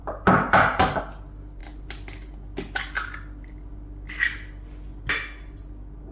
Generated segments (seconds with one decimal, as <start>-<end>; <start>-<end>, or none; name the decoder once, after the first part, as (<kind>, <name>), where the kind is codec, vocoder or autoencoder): none